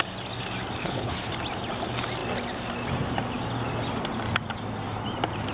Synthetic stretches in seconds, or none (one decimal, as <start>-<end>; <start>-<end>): 0.8-1.3